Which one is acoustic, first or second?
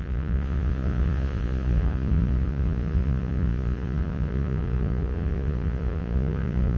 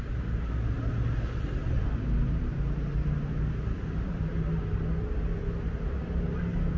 second